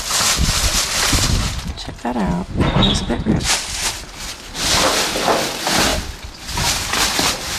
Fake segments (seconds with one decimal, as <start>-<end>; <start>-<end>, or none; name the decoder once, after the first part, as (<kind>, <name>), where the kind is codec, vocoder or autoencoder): none